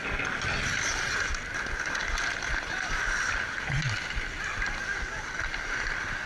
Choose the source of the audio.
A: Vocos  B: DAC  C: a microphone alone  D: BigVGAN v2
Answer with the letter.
C